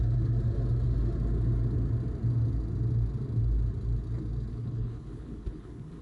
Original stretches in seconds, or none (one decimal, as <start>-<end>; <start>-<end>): 0.0-4.5

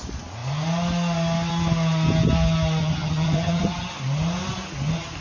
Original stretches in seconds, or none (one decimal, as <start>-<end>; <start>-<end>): 0.0-2.8; 3.9-5.2

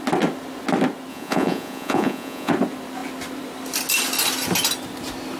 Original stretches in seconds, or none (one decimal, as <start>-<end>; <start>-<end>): 0.0-1.1; 2.5-5.4

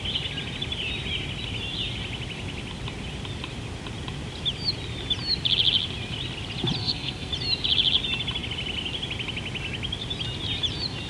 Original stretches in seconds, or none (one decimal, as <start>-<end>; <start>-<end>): 0.0-6.8; 7.3-11.1

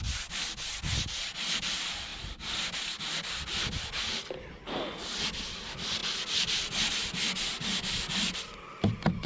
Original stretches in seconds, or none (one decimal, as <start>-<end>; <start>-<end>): 0.0-9.3

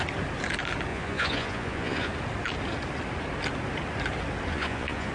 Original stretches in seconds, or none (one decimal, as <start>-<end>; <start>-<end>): 0.0-0.9; 2.1-4.5

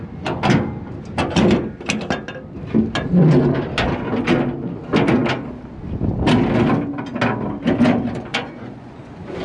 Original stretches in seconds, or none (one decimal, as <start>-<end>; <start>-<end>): 0.0-8.3

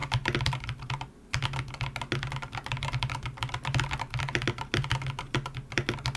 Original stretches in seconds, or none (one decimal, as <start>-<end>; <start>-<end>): 0.0-6.2